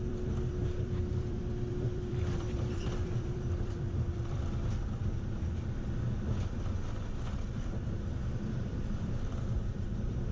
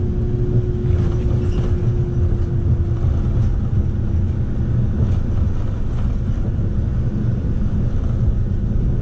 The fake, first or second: first